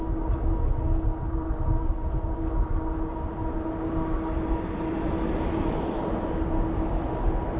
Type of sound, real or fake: real